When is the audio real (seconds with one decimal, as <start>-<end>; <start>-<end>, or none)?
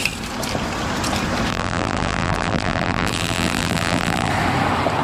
0.0-1.5; 4.3-5.0